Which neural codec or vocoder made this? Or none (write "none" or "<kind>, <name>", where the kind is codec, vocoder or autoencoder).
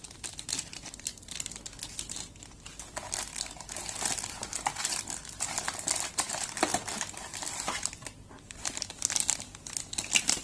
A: none